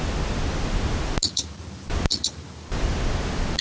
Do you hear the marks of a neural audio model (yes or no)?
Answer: no